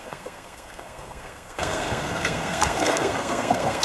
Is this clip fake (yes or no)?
yes